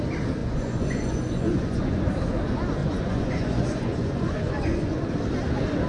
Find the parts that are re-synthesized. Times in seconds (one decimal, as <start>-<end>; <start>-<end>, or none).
0.4-2.0; 2.8-5.0